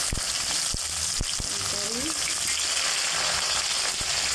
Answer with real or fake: real